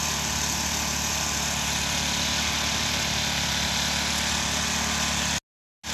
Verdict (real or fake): real